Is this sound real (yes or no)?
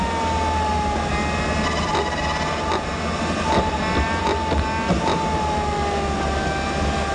yes